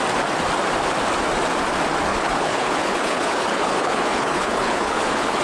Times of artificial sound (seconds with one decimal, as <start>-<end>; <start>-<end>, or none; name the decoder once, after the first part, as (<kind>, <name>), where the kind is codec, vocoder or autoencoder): 2.1-5.4 (codec, HILCodec)